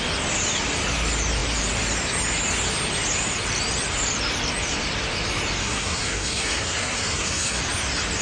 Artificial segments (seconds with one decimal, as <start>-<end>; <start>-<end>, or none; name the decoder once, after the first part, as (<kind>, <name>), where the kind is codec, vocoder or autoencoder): 5.6-7.6 (codec, SNAC)